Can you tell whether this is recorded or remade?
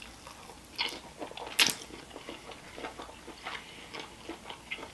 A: recorded